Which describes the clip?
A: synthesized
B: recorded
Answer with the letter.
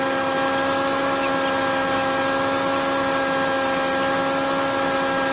B